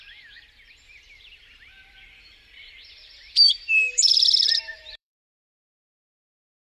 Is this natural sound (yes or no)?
no